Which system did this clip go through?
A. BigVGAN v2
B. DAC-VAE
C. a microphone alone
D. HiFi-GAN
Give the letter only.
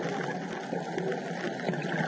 C